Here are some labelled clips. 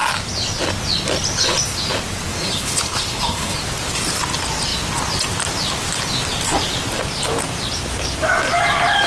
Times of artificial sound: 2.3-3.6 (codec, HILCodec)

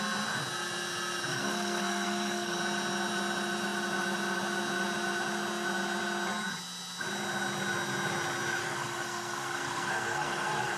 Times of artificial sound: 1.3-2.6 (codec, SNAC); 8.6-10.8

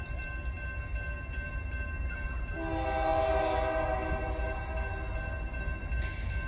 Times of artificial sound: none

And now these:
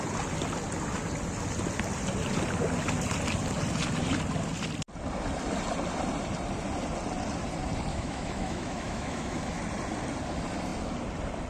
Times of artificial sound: 7.9-9.6 (autoencoder, DAC-VAE)

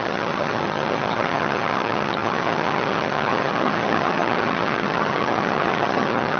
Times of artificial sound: 0.0-6.4 (vocoder, HiFi-GAN)

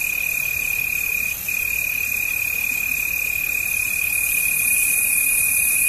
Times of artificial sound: 4.7-5.9 (vocoder, BigVGAN v2)

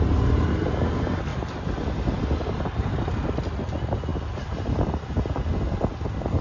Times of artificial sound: 1.3-2.2 (vocoder, BigVGAN v2); 4.1-5.1

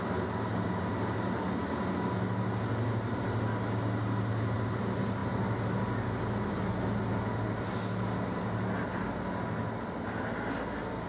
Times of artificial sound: none